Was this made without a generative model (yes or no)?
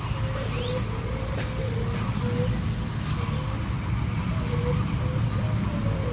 yes